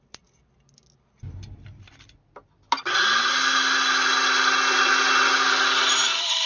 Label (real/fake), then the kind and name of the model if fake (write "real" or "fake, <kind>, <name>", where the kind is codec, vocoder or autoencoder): real